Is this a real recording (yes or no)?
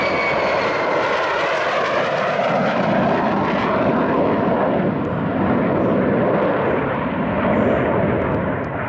yes